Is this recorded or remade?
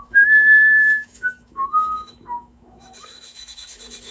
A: remade